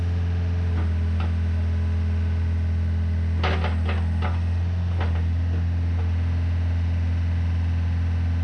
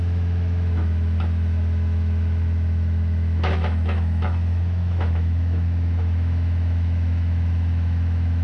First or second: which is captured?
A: first